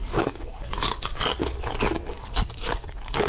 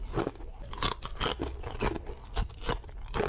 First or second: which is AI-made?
first